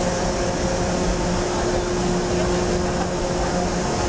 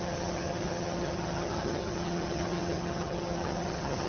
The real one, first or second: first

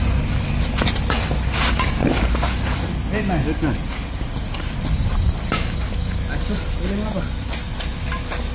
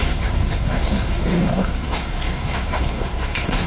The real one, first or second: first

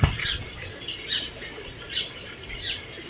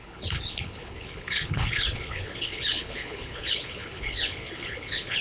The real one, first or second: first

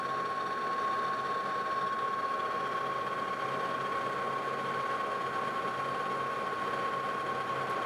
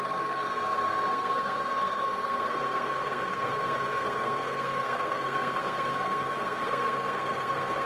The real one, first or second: first